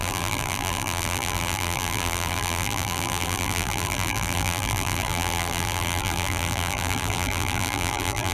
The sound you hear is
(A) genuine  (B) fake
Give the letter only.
B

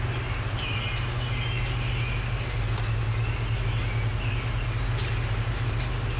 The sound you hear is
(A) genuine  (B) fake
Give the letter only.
A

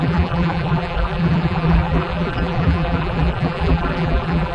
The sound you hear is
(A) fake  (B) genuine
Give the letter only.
A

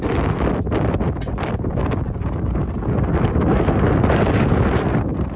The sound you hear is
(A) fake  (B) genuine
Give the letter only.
A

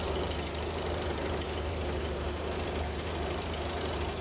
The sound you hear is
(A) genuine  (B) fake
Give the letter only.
B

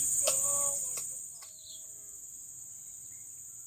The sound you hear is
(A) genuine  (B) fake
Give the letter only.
A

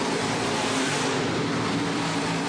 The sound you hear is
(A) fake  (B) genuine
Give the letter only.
A